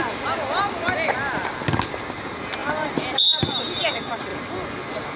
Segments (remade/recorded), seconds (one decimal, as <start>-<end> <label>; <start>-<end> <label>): 0.0-2.6 recorded; 2.6-3.6 remade; 3.6-5.2 recorded